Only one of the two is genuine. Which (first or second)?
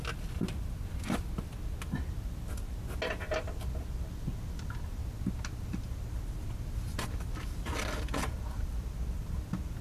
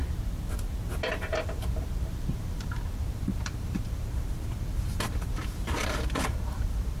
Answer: first